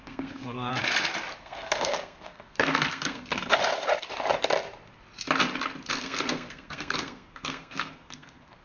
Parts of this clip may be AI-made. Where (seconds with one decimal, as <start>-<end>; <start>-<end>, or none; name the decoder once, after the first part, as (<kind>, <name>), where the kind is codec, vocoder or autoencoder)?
0.0-0.7 (codec, SNAC); 1.4-3.6; 5.9-8.6